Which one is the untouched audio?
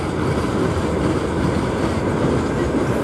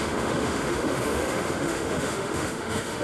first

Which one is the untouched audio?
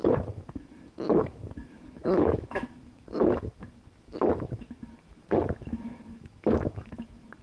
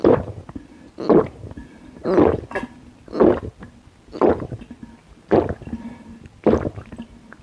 second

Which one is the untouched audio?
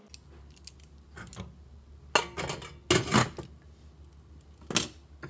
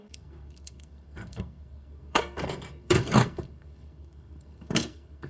first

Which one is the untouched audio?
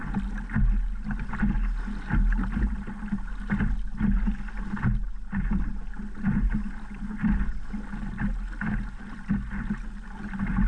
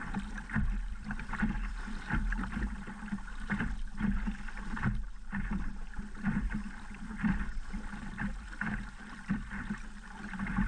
first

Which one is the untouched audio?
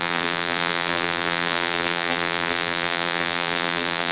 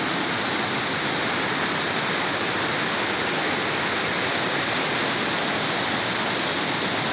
second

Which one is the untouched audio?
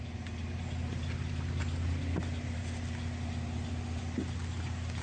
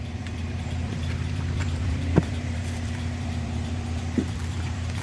first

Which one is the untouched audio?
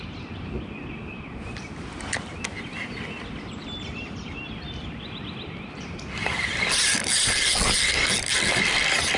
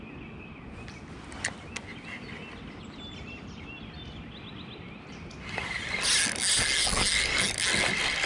second